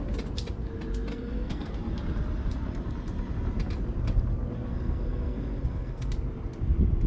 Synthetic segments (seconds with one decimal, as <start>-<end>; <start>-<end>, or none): 1.1-1.7; 4.7-6.1